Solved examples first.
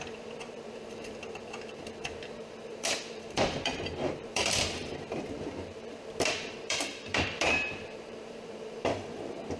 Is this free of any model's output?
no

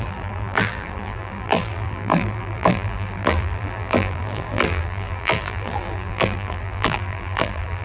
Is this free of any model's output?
no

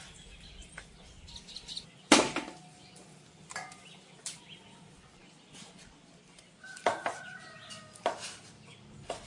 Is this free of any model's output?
yes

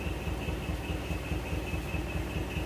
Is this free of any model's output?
yes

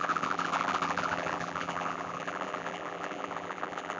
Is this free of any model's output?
no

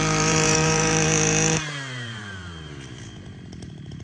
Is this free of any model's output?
no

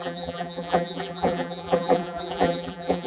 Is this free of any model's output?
no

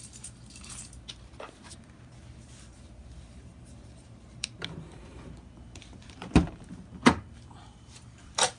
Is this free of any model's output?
no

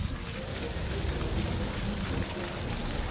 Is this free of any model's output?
yes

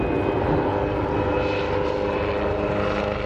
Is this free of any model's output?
yes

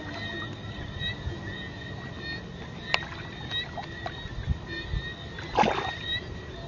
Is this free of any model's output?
yes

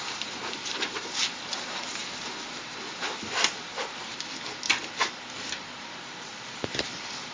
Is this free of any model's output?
no